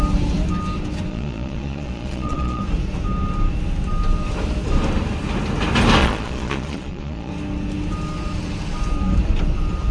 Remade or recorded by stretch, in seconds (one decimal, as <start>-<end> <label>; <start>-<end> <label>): 0.0-1.1 recorded; 1.1-2.6 remade; 2.6-6.0 recorded; 6.0-7.3 remade; 7.3-9.9 recorded